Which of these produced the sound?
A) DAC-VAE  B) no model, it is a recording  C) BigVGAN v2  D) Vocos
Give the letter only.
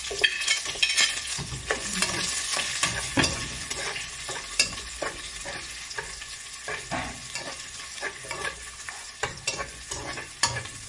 D